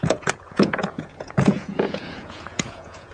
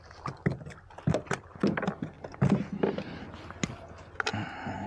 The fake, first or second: first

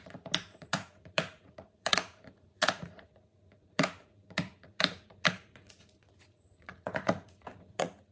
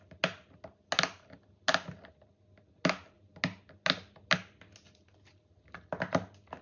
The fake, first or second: first